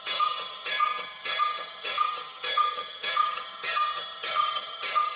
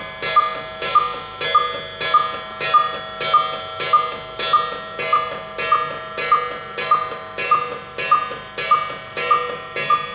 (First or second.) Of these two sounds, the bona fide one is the second